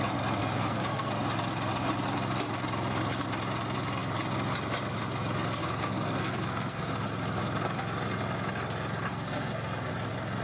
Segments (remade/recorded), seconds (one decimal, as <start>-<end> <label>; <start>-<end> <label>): 0.0-0.4 recorded; 0.4-1.1 remade; 1.1-5.6 recorded; 5.6-6.9 remade; 6.9-9.1 recorded; 9.1-9.9 remade; 9.9-10.4 recorded